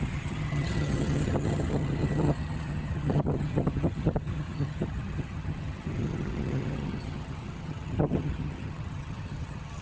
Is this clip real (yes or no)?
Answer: no